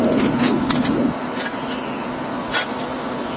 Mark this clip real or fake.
real